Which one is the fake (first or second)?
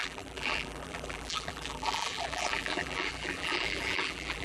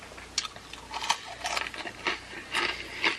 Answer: first